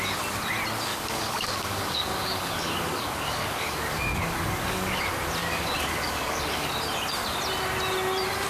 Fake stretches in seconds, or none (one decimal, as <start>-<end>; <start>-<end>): 0.9-5.0; 5.4-6.7